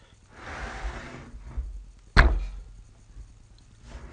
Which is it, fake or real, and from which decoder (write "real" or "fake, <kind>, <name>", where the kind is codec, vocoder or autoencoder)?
real